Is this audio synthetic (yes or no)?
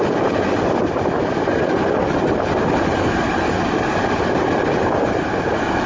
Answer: no